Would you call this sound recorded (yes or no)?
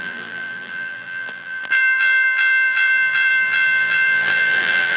no